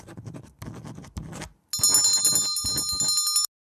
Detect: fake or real real